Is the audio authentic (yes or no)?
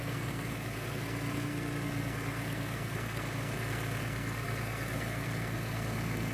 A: no